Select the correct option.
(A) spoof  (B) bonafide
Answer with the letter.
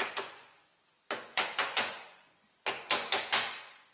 A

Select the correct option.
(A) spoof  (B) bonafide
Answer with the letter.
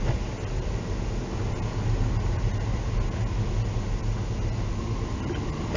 B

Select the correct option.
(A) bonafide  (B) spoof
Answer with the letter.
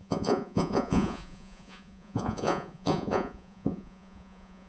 B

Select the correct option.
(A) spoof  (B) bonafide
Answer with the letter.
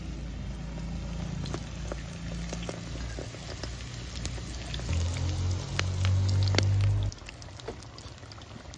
B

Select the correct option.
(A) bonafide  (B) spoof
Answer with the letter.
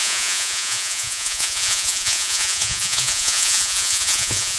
B